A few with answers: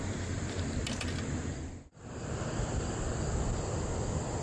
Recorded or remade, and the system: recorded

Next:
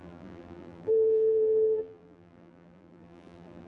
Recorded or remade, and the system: remade, vocoder, BigVGAN v2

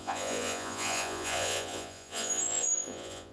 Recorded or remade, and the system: remade, vocoder, Vocos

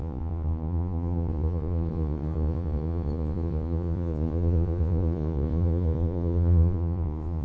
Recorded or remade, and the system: remade, vocoder, Vocos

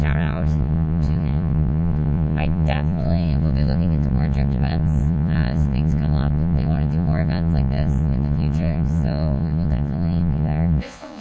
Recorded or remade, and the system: remade, vocoder, Vocos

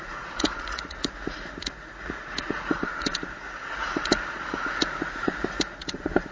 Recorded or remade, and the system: remade, vocoder, Vocos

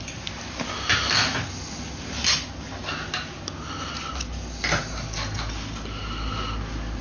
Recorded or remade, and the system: recorded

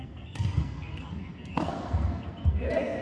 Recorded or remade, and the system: remade, codec, SNAC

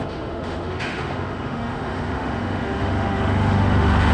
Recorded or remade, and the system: remade, autoencoder, DAC-VAE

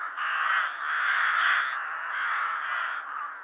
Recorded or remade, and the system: recorded